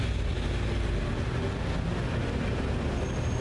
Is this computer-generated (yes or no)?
no